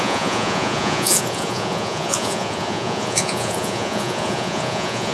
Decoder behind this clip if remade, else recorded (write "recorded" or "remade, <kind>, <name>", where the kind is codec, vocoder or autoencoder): remade, vocoder, Vocos